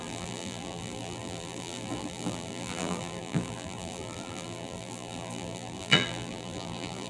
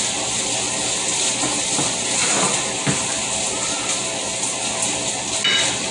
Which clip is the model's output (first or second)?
first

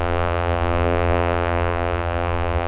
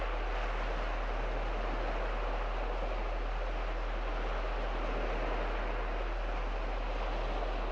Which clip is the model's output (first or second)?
first